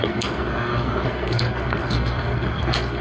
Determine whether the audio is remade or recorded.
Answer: remade